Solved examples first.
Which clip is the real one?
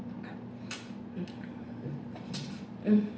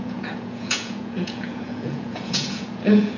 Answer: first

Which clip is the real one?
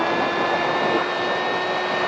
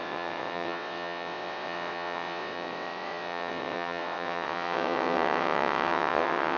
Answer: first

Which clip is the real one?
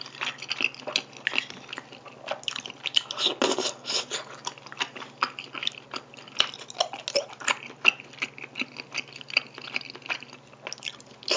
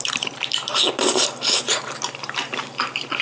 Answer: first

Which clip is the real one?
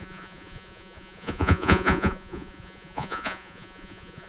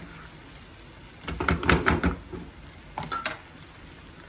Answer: second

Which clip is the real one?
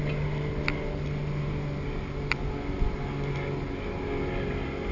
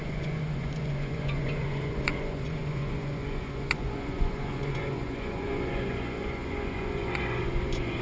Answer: first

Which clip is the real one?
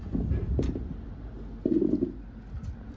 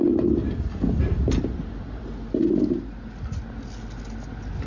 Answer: second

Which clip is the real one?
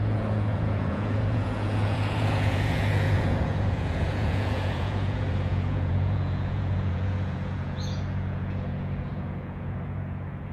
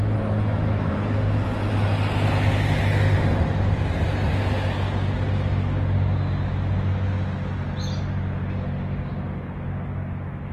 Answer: second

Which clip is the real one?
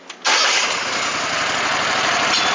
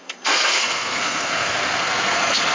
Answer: first